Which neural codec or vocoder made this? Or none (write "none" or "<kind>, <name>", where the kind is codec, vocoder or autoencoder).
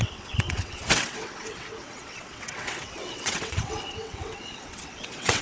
vocoder, WaveNeXt